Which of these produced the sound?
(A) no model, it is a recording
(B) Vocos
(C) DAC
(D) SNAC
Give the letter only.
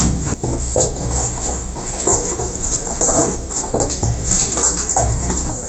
C